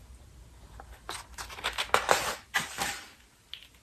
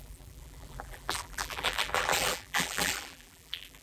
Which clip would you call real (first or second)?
first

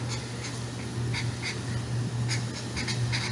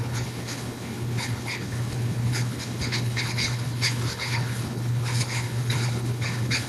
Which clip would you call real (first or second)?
first